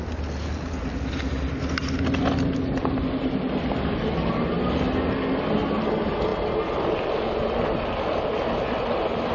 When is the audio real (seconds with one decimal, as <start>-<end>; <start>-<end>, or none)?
0.0-9.3